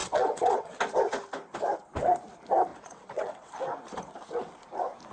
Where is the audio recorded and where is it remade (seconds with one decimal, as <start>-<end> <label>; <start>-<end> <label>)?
0.0-0.8 remade; 0.8-2.7 recorded; 2.7-3.5 remade; 3.5-5.1 recorded